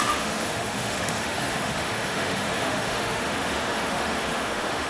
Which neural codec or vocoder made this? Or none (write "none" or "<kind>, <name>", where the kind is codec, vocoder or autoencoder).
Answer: autoencoder, DAC-VAE